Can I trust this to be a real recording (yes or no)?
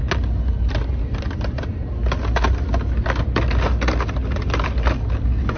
yes